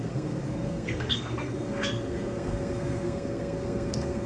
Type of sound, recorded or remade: remade